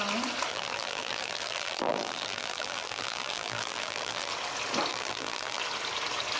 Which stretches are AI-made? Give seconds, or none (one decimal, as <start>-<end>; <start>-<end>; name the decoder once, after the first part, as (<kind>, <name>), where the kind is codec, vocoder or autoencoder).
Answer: 0.5-4.3 (vocoder, BigVGAN v2); 4.9-5.6